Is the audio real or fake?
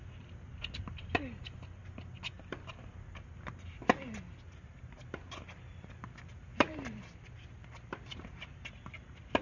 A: real